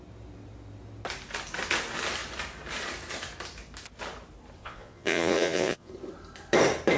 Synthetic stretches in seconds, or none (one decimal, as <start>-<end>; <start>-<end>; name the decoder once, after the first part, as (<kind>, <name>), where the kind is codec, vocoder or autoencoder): 4.6-5.9 (vocoder, Vocos)